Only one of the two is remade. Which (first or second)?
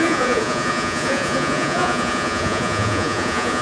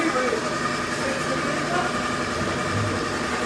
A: first